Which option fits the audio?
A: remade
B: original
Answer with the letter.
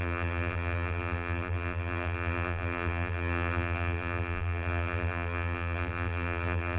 A